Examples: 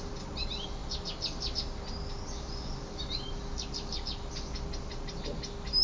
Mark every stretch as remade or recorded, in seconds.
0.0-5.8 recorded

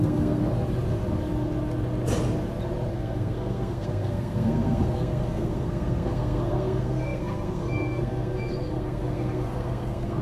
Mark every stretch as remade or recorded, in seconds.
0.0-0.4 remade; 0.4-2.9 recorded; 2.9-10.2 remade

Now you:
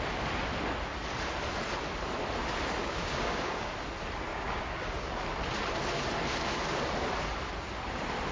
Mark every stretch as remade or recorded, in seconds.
0.0-2.8 recorded; 2.8-3.7 remade; 3.7-4.3 recorded; 4.3-5.1 remade; 5.1-8.3 recorded

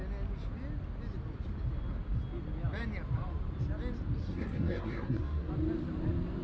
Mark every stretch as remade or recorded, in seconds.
0.0-4.2 recorded; 4.2-5.5 remade; 5.5-6.4 recorded

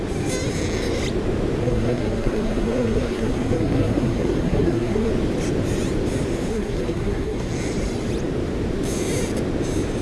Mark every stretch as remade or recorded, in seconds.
0.0-1.6 recorded; 1.6-5.1 remade; 5.1-6.5 recorded; 6.5-7.5 remade; 7.5-10.0 recorded

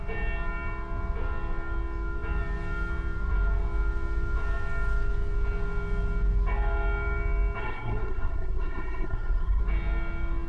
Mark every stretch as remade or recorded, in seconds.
0.0-7.6 recorded; 7.6-9.6 remade; 9.6-10.5 recorded

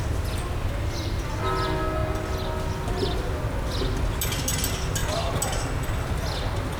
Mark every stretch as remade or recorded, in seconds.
0.0-6.8 recorded

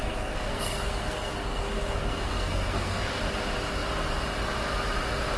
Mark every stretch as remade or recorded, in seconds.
0.0-3.2 remade; 3.2-5.4 recorded